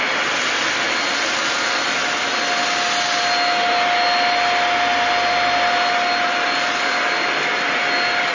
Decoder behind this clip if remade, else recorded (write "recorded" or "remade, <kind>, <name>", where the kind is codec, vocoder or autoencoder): recorded